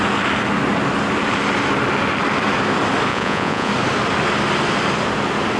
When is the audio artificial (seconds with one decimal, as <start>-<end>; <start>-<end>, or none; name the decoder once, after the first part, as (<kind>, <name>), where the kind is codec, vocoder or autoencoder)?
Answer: 3.1-3.7 (vocoder, Vocos)